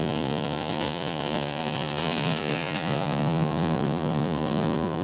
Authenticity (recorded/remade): remade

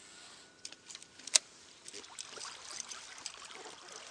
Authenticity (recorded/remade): recorded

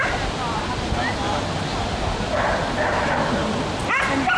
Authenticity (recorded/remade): recorded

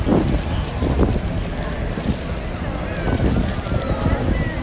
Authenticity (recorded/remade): recorded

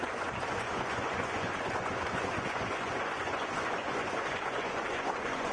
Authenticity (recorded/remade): remade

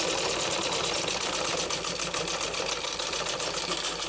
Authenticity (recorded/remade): recorded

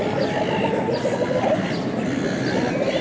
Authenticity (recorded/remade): recorded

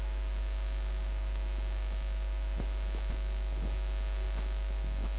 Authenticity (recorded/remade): recorded